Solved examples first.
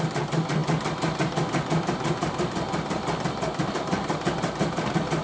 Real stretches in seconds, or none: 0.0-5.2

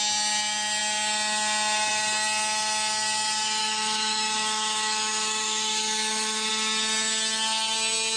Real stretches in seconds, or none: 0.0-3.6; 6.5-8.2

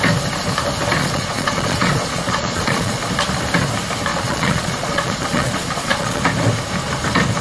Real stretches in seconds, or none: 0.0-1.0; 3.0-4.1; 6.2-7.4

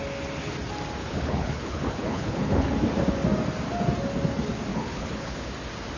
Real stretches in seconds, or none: 0.0-1.0; 2.7-4.7; 5.5-6.0

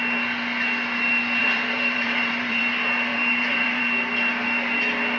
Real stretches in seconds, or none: 0.0-1.4; 2.6-3.1; 3.8-5.2

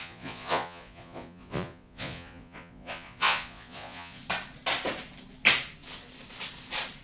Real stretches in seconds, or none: 4.2-7.0